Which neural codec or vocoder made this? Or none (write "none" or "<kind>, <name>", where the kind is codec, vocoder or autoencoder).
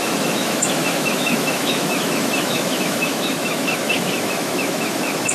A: autoencoder, DAC-VAE